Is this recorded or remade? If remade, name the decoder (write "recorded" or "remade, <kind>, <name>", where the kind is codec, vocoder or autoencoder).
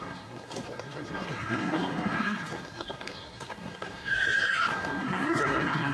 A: remade, codec, SNAC